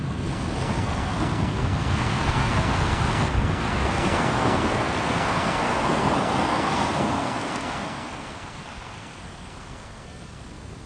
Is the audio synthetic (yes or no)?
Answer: yes